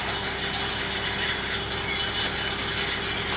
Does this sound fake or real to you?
real